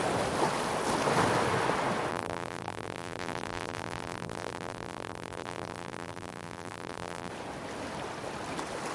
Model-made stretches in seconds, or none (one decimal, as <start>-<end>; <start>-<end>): 2.1-7.3